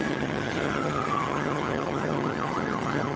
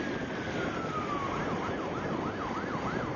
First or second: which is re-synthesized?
first